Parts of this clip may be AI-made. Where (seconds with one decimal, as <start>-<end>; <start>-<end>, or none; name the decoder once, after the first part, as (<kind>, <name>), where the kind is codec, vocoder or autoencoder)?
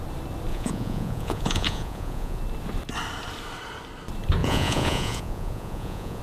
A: 0.5-2.4 (vocoder, Vocos); 4.4-6.2